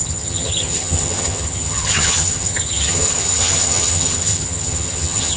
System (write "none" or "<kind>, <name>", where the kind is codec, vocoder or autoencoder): vocoder, HiFi-GAN